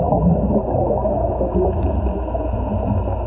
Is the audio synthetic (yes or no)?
no